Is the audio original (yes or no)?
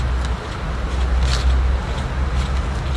yes